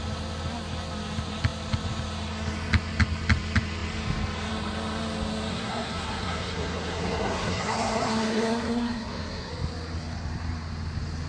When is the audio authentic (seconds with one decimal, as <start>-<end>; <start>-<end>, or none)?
0.0-5.5; 9.5-11.3